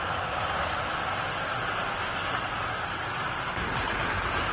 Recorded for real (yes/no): yes